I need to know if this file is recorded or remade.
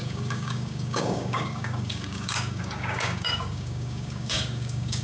remade